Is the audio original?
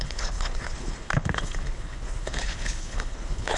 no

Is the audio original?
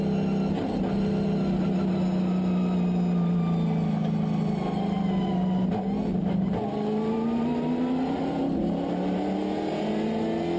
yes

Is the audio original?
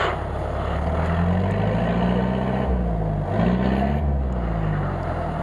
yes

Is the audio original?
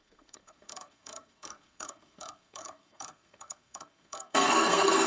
no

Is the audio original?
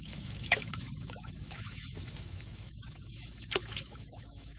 no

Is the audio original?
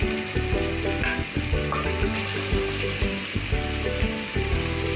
yes